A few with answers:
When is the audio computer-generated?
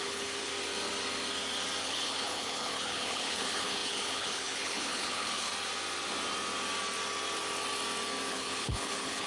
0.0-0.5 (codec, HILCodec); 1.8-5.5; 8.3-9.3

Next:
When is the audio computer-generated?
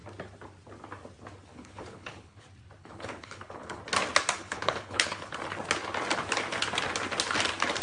1.5-2.4 (codec, HILCodec); 2.8-3.8; 4.4-5.3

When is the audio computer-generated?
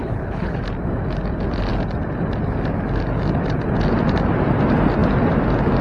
0.0-0.6 (codec, HILCodec)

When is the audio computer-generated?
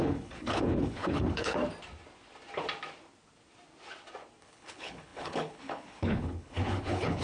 0.0-1.6 (codec, HILCodec); 4.4-7.2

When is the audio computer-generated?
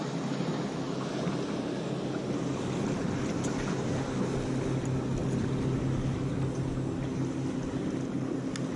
none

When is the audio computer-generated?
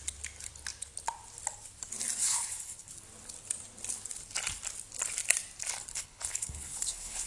2.2-2.9 (codec, HILCodec); 5.9-7.3